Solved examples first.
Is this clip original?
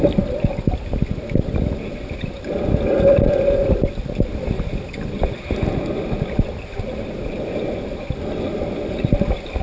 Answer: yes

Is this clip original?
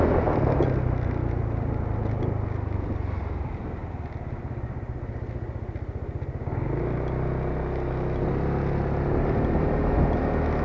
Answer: yes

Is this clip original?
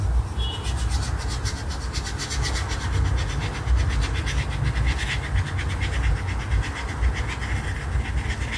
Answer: yes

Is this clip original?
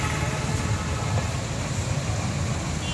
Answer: yes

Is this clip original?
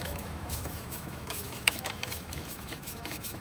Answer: no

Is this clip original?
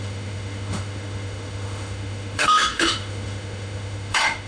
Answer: no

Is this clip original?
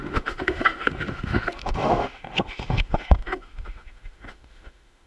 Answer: no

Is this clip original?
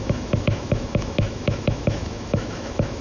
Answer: no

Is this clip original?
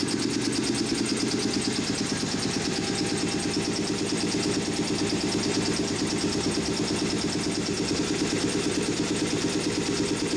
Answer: yes